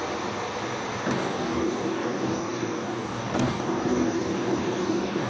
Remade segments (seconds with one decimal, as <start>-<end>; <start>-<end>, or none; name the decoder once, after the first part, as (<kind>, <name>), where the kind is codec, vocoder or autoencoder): 1.1-5.3 (codec, DAC)